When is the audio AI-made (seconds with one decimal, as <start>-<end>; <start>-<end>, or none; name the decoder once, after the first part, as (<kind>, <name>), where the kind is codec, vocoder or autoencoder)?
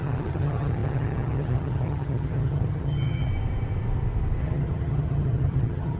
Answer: 0.0-3.3 (vocoder, HiFi-GAN); 4.4-6.0